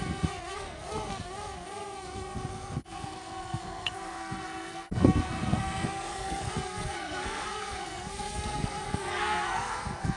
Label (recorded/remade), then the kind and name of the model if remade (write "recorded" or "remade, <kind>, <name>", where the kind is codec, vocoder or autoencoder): remade, codec, SNAC